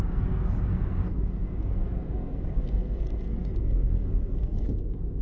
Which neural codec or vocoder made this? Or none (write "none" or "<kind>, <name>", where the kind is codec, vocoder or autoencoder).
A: codec, SNAC